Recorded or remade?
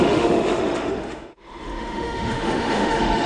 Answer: remade